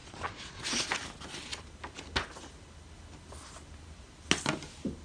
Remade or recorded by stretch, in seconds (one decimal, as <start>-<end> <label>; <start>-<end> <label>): 0.0-0.6 remade; 0.6-5.0 recorded